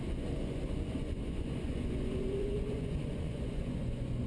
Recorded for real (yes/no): no